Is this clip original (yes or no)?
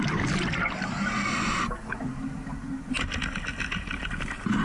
yes